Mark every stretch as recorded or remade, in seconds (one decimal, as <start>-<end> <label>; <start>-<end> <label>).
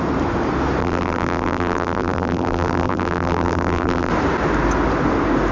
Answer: 0.0-0.8 recorded; 0.8-4.1 remade; 4.1-5.5 recorded